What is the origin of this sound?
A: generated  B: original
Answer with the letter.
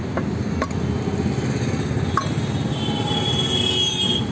B